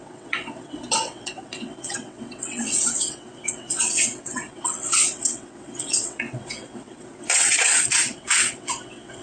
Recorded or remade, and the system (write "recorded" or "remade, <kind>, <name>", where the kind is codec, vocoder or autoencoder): remade, vocoder, WaveNeXt